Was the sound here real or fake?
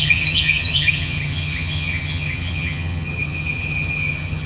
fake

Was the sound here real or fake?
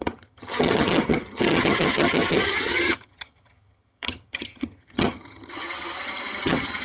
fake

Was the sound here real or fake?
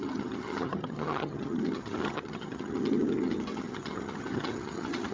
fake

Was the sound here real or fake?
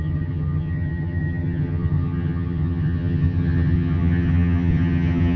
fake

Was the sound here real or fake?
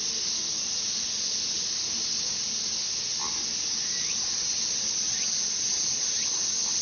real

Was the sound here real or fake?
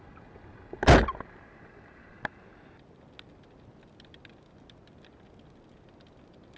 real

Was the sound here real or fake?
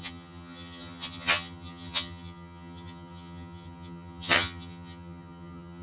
fake